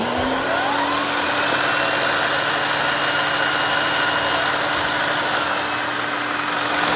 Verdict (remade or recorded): recorded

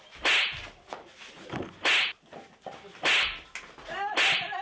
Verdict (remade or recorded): recorded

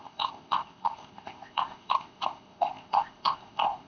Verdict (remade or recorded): remade